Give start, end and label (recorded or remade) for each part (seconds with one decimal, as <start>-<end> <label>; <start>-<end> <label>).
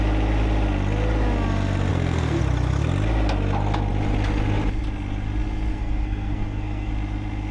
0.0-1.9 recorded; 1.9-2.4 remade; 2.4-5.7 recorded; 5.7-6.9 remade; 6.9-7.5 recorded